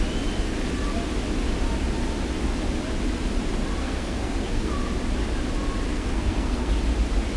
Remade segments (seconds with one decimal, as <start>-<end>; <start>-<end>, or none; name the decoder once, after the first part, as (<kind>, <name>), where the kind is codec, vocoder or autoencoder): 3.8-4.7 (codec, SNAC); 5.9-6.7